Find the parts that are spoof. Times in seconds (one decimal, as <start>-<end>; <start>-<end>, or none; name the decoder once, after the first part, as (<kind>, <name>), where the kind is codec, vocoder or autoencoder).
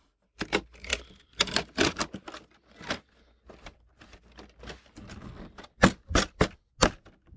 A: none